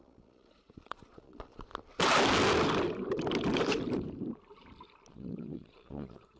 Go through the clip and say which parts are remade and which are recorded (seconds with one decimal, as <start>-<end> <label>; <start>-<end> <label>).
0.0-1.7 remade; 1.7-5.1 recorded; 5.1-6.4 remade